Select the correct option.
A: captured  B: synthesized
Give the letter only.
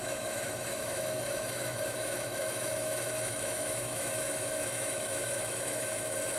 B